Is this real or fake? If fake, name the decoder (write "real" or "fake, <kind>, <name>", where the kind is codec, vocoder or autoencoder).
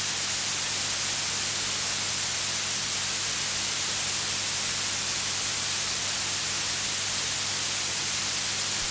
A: real